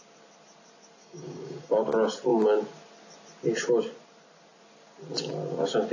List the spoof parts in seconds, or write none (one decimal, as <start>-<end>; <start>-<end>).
1.0-1.7